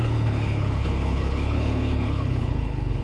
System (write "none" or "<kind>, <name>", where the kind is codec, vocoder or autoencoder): codec, HILCodec